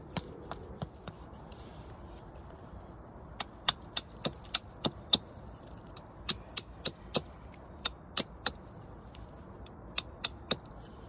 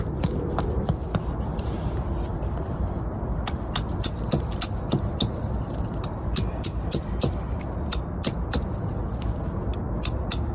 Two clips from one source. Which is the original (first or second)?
second